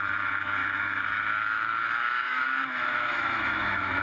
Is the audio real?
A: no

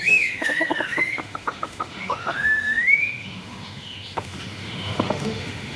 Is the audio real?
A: no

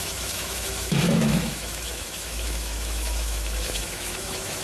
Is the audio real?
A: no